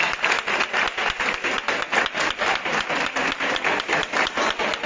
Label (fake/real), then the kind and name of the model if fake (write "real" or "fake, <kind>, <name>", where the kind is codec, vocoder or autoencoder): real